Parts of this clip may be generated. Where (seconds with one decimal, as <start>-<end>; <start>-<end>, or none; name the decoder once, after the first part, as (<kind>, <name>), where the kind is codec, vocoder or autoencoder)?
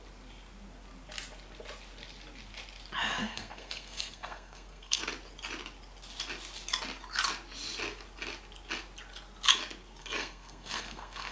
3.2-5.0 (codec, SNAC); 10.0-11.3